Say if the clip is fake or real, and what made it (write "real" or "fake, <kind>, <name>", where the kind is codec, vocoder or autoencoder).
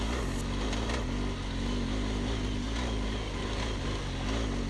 real